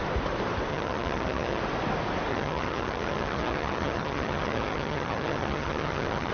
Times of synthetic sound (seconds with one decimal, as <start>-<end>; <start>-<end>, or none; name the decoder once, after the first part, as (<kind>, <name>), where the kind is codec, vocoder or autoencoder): 0.7-1.6 (vocoder, HiFi-GAN); 2.3-6.3